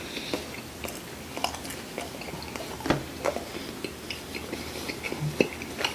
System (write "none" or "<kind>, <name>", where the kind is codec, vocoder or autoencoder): none